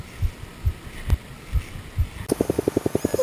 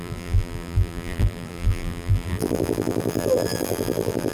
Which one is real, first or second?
first